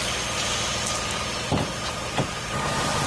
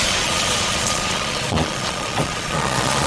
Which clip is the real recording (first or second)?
first